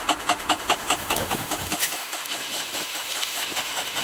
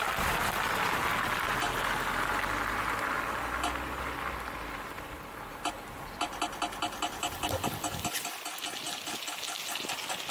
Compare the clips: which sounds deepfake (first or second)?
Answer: first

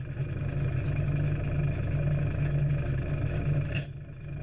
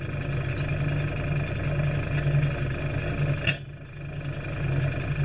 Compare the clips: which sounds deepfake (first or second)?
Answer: first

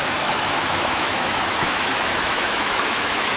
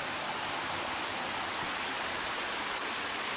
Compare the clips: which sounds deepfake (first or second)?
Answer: first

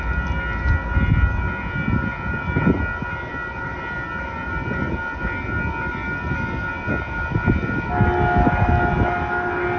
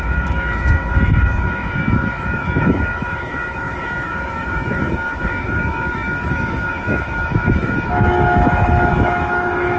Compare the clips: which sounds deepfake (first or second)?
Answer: second